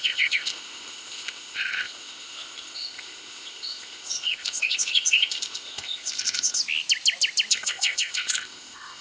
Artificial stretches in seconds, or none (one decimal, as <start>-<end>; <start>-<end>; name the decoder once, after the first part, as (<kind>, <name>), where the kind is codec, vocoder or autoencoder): 0.0-6.6 (codec, ZipCodec); 7.5-9.0